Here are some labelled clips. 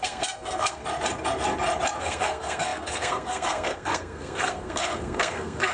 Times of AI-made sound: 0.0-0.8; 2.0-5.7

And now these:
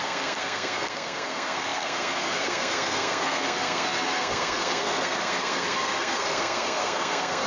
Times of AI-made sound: 0.0-7.5

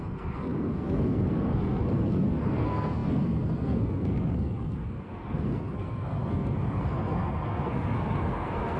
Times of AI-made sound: 0.0-8.8